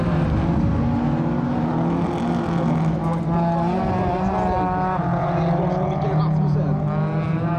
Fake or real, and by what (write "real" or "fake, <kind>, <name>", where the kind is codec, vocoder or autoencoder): real